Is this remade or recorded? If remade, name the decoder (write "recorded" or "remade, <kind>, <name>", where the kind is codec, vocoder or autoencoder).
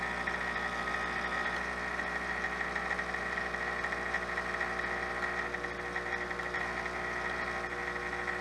recorded